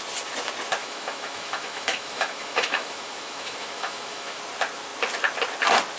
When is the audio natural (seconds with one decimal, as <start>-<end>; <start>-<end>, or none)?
0.0-0.8; 4.4-6.0